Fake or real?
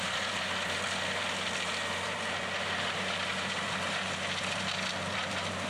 fake